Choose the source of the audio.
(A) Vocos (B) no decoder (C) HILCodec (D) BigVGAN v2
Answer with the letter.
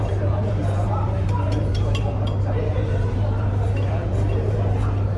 D